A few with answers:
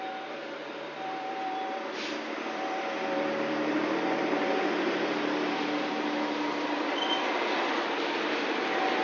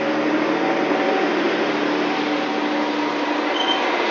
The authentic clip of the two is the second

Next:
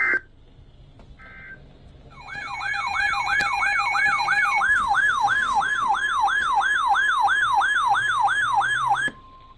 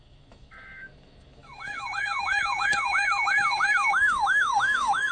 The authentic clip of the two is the first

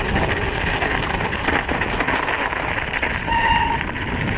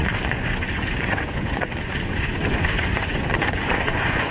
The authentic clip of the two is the first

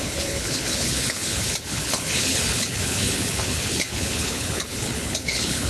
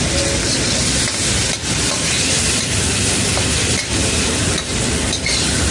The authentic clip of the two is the second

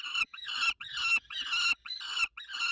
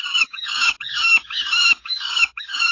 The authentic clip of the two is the first